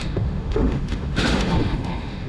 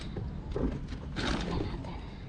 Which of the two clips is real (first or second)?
second